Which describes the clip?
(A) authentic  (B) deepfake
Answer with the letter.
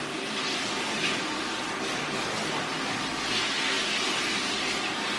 A